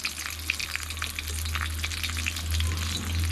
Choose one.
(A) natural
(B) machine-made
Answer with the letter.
A